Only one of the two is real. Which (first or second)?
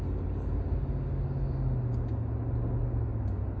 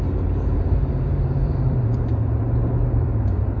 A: first